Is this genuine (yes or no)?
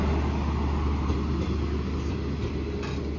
yes